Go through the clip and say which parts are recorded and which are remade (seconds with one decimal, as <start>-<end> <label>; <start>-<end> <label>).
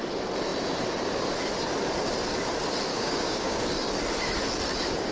0.0-2.9 recorded; 2.9-3.6 remade; 3.6-5.1 recorded